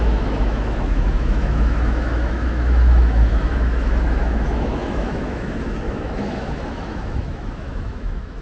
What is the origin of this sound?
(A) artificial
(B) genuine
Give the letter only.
A